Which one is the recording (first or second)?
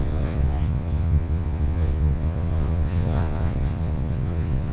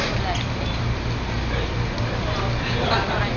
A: second